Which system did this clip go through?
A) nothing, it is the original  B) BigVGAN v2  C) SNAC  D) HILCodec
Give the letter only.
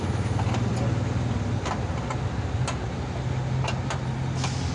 A